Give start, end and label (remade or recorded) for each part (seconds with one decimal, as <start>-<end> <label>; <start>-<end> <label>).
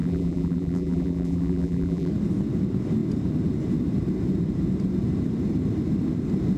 0.0-2.1 remade; 2.1-6.6 recorded